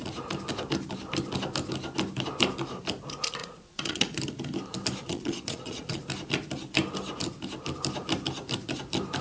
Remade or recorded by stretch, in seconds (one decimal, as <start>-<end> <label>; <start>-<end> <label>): 0.0-3.4 recorded; 3.4-4.2 remade; 4.2-5.0 recorded; 5.0-6.0 remade; 6.0-9.2 recorded